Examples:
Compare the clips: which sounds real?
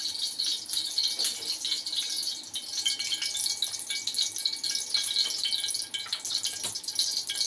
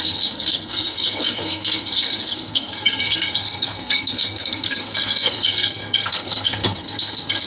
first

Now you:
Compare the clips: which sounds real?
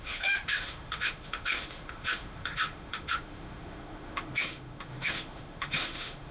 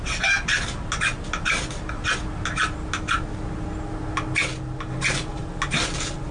second